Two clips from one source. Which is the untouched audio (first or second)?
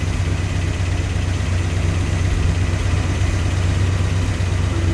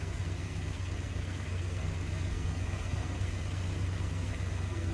first